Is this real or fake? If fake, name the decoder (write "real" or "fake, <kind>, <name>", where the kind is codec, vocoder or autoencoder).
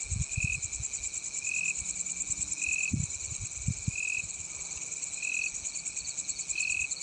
real